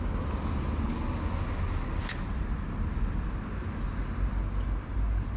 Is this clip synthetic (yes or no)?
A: no